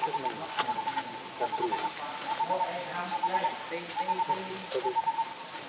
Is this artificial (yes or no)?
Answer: no